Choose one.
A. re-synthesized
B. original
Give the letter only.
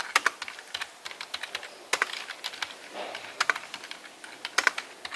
B